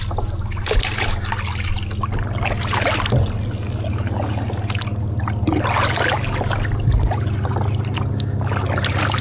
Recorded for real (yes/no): yes